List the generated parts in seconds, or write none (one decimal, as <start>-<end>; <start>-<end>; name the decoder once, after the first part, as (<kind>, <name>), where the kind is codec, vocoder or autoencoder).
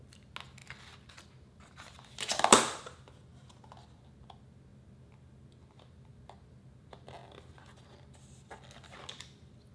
none